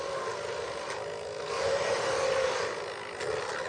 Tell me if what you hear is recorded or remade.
recorded